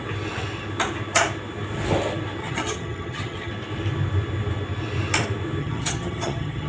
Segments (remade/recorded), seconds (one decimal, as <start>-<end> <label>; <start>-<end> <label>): 0.0-2.4 recorded; 2.4-3.5 remade; 3.5-5.6 recorded; 5.6-6.7 remade